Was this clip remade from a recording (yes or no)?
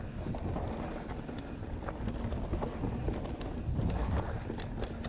no